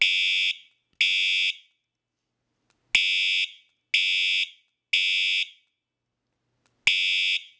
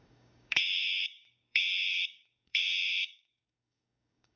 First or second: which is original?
first